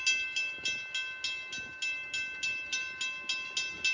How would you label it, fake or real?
real